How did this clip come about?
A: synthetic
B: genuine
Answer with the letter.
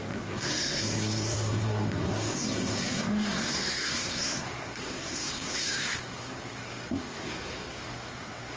A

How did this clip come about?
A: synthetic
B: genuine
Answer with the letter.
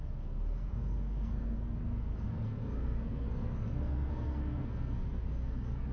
A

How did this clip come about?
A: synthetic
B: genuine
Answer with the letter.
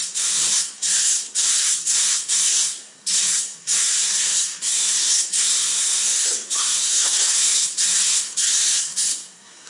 A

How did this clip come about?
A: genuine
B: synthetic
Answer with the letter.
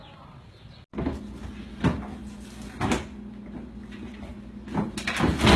A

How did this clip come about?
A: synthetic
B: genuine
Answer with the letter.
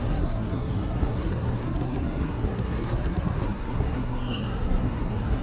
A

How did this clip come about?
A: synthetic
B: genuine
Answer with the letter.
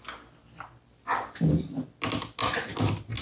B